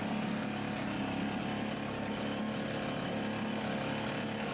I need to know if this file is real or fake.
real